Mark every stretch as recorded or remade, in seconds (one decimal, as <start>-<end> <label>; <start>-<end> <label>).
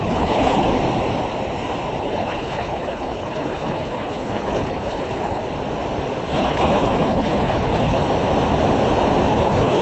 0.0-0.7 remade; 0.7-2.0 recorded; 2.0-5.4 remade; 5.4-6.3 recorded; 6.3-8.0 remade; 8.0-9.3 recorded; 9.3-9.8 remade